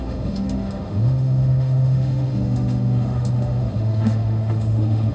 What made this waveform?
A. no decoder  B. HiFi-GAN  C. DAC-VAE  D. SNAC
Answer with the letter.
C